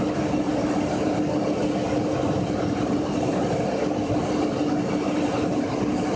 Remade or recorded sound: recorded